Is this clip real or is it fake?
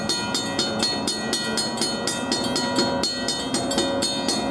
real